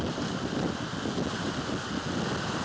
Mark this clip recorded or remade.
recorded